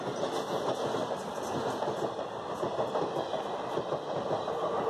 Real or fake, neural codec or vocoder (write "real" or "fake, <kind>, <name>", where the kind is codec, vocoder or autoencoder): real